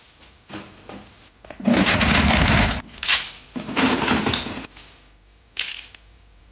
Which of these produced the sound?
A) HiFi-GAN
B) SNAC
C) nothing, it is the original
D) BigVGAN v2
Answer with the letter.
C